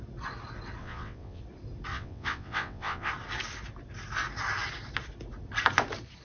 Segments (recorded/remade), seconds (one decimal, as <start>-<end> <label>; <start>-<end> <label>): 0.0-0.8 recorded; 0.8-1.4 remade; 1.4-1.9 recorded; 1.9-3.1 remade; 3.1-6.2 recorded